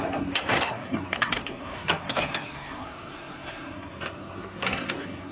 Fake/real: fake